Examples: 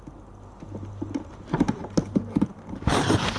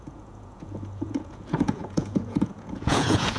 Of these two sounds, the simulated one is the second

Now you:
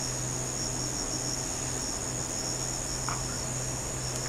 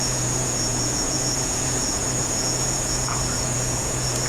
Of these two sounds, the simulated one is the second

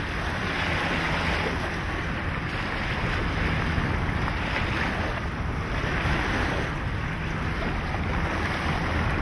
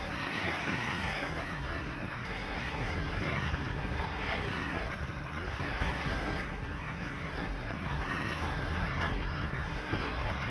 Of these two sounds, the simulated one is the second